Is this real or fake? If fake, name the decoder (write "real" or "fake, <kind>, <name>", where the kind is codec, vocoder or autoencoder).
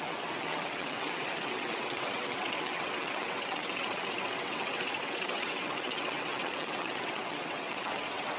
fake, vocoder, WaveNeXt